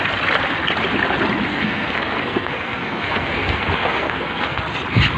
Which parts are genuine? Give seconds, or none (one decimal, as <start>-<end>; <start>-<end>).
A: 0.0-1.5; 4.6-5.2